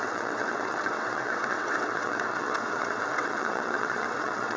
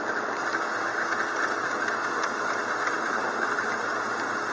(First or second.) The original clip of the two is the second